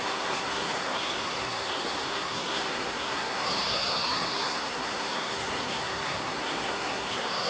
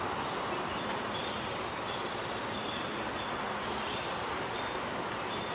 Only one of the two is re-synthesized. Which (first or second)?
first